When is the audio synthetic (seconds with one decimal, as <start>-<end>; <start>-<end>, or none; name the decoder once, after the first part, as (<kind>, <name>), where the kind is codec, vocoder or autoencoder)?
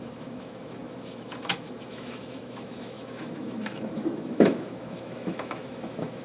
0.0-6.2 (autoencoder, DAC-VAE)